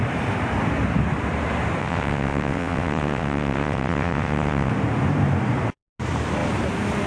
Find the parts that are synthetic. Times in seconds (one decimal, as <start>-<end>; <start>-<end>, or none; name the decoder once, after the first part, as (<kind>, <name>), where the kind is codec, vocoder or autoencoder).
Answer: 1.8-4.7 (vocoder, WaveNeXt)